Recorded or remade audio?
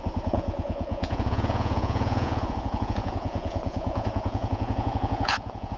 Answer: remade